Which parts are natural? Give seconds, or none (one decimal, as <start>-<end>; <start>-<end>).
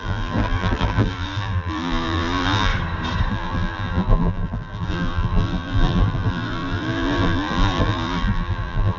2.7-3.3